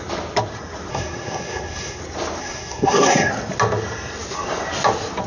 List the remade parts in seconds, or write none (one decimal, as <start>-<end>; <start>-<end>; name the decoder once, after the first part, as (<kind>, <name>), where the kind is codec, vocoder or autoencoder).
0.9-2.0 (codec, SNAC); 2.4-3.3